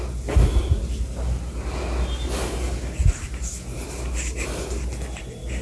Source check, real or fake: real